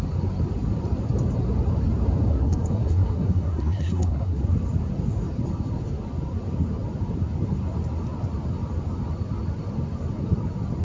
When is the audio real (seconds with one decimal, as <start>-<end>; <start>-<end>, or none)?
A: 0.0-2.3; 4.4-10.8